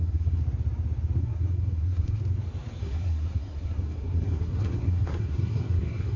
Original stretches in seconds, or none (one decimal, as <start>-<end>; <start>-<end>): 0.4-1.2; 2.2-2.8